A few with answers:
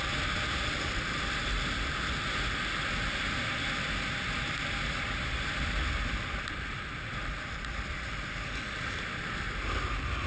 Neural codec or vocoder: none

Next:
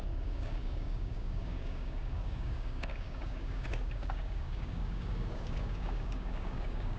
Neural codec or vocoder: codec, DAC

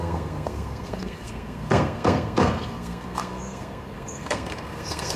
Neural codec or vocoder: codec, SNAC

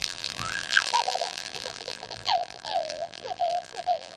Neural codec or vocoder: vocoder, BigVGAN v2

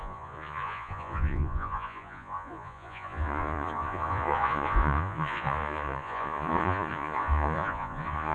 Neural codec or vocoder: vocoder, Vocos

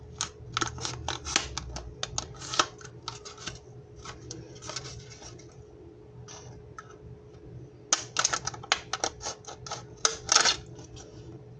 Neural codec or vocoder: none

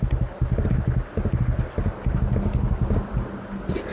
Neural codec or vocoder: none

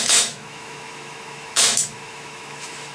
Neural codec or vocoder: autoencoder, DAC-VAE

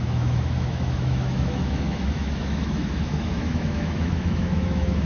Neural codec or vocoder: autoencoder, DAC-VAE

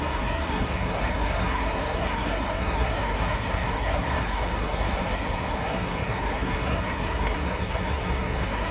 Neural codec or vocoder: codec, SNAC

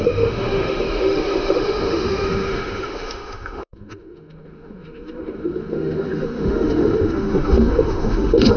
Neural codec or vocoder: autoencoder, DAC-VAE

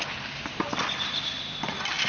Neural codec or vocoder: none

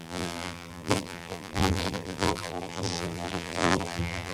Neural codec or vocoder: vocoder, BigVGAN v2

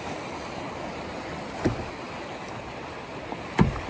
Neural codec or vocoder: none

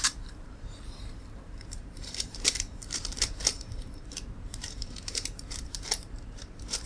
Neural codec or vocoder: vocoder, BigVGAN v2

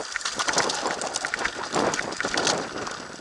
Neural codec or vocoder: none